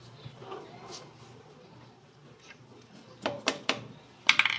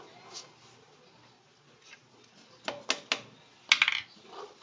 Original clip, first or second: second